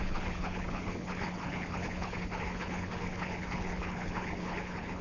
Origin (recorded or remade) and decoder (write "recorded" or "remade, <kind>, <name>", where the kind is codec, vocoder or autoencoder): remade, codec, HILCodec